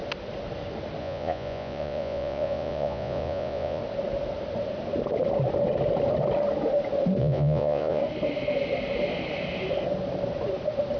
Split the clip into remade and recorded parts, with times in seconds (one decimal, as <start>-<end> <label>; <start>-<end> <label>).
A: 0.0-1.0 recorded; 1.0-3.8 remade; 3.8-7.2 recorded; 7.2-8.0 remade; 8.0-11.0 recorded